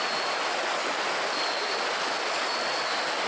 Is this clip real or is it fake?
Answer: real